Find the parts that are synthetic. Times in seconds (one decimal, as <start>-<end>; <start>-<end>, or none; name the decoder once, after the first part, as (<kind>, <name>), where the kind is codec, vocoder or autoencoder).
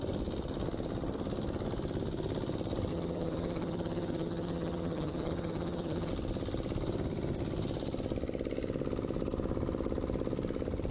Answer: 2.9-6.1 (vocoder, HiFi-GAN)